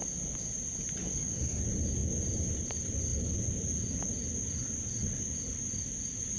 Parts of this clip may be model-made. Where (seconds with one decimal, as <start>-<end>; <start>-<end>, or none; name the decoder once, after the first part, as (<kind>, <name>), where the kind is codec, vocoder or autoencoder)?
1.0-1.6 (autoencoder, DAC-VAE)